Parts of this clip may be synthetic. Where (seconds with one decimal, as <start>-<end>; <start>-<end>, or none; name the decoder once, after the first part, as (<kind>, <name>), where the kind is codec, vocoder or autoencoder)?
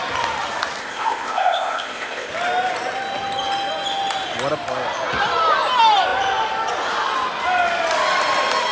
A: 0.8-2.3 (codec, ZipCodec)